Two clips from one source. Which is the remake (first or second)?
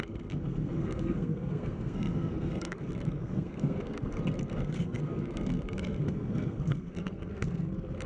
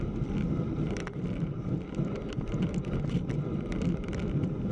first